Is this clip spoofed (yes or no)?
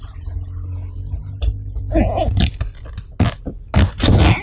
no